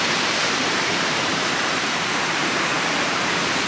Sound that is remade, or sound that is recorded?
remade